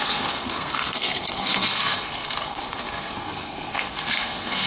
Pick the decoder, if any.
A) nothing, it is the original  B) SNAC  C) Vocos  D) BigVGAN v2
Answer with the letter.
B